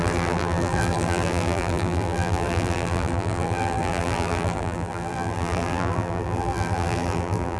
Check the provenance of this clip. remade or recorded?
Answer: remade